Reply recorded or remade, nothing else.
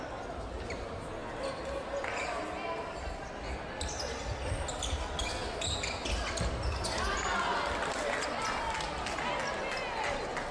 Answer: recorded